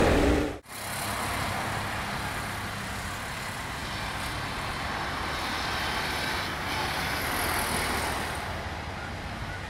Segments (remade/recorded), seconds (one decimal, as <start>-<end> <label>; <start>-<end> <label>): 0.0-9.7 recorded